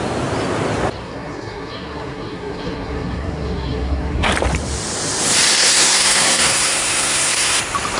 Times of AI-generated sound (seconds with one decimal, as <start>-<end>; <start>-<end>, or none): 1.0-4.3; 5.5-7.6